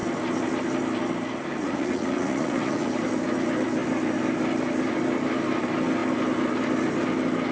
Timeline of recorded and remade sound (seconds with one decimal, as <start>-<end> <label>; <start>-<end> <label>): 0.0-1.6 recorded; 1.6-2.9 remade; 2.9-7.5 recorded